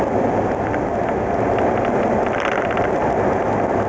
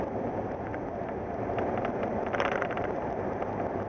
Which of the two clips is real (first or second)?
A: first